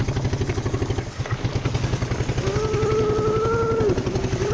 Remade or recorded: recorded